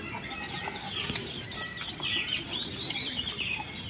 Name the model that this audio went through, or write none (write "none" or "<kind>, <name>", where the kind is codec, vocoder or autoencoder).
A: none